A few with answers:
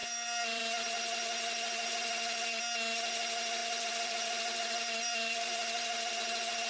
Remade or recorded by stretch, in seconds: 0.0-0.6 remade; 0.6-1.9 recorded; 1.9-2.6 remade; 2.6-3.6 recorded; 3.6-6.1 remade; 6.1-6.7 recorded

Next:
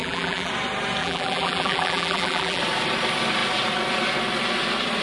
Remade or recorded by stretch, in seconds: 0.0-0.5 remade; 0.5-1.0 recorded; 1.0-2.6 remade; 2.6-5.0 recorded

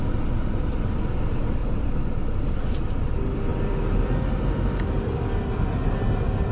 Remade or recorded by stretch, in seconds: 0.0-1.6 recorded; 1.6-2.5 remade; 2.5-3.5 recorded; 3.5-4.3 remade; 4.3-6.5 recorded

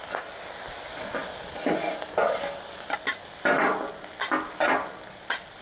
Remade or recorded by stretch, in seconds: 0.0-5.6 recorded

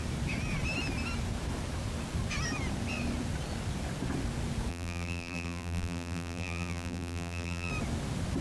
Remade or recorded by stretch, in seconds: 0.0-4.7 recorded; 4.7-7.7 remade; 7.7-8.4 recorded

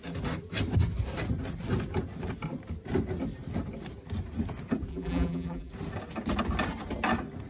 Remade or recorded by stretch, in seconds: 0.0-4.9 recorded; 4.9-5.7 remade; 5.7-7.5 recorded